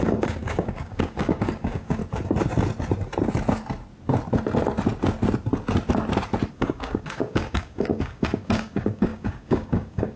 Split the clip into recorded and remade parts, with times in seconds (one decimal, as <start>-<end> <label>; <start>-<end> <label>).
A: 0.0-2.0 remade; 2.0-6.5 recorded; 6.5-10.2 remade